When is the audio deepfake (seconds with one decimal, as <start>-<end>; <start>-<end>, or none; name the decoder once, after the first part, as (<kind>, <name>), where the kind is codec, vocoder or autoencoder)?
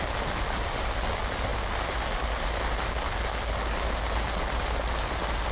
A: none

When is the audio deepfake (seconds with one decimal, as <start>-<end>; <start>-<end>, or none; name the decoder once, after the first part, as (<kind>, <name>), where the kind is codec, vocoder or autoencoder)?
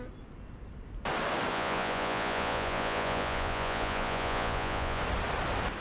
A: 1.5-5.0 (vocoder, Vocos)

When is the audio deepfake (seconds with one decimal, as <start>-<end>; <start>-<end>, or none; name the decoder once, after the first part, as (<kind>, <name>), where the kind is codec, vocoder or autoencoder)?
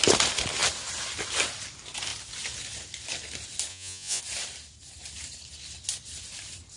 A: 3.7-4.2 (vocoder, Vocos)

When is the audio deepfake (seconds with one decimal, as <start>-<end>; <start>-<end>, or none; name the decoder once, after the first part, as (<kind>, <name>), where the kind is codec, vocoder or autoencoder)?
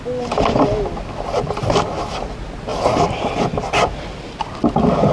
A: none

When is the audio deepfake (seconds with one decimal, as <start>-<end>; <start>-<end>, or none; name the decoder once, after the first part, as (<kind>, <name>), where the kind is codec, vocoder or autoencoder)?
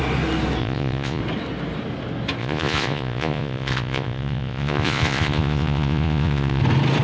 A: 0.6-1.2 (vocoder, Vocos); 2.4-6.6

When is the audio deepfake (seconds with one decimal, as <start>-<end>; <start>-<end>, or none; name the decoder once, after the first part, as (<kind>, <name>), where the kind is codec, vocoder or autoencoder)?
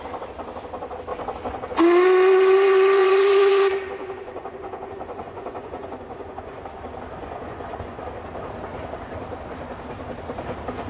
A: 3.0-3.5 (vocoder, Vocos); 4.0-6.6; 7.2-8.0